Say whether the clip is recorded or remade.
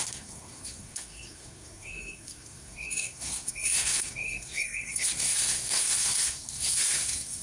remade